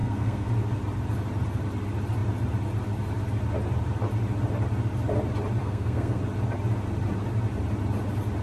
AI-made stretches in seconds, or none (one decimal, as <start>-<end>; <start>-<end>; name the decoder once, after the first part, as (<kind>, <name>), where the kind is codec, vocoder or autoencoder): 0.0-0.5 (codec, SNAC); 5.6-6.2